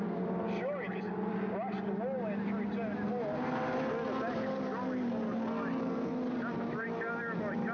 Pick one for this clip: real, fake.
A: real